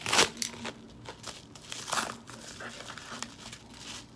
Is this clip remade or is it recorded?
recorded